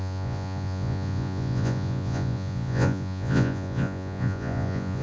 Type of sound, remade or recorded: remade